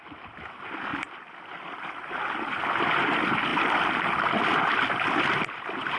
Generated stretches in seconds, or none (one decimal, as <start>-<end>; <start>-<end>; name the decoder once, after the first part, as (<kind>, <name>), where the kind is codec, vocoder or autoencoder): 0.0-6.0 (vocoder, BigVGAN v2)